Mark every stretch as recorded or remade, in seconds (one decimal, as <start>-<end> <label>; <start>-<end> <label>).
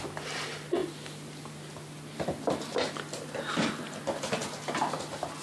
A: 0.0-5.4 recorded